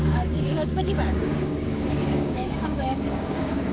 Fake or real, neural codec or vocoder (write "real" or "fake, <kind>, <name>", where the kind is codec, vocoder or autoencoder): fake, codec, DAC